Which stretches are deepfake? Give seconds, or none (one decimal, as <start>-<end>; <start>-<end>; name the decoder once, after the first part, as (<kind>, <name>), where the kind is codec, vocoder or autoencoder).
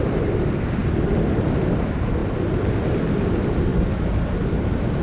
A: none